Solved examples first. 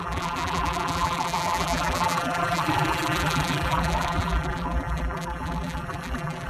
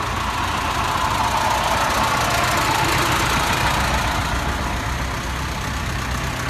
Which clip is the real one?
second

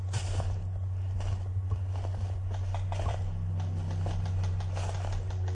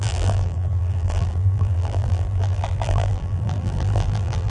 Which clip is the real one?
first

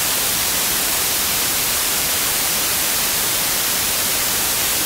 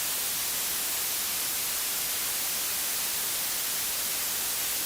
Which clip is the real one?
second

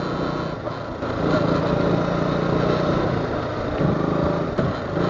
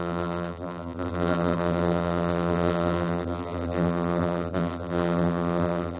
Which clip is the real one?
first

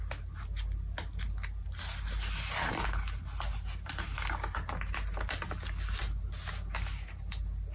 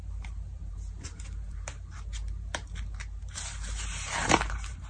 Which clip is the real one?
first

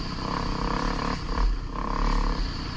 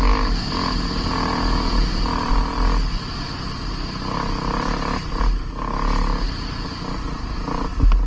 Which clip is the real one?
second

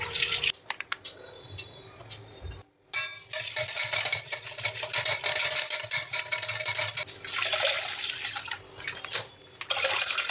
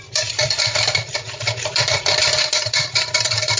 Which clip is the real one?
first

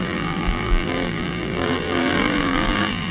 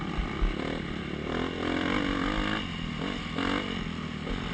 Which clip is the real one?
second